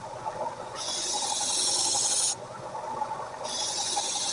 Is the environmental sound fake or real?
fake